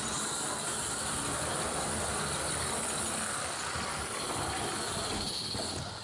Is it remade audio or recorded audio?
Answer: recorded